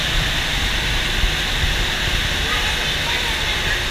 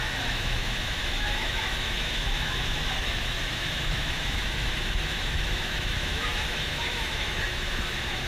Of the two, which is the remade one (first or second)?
second